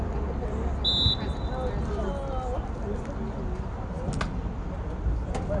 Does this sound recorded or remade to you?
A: recorded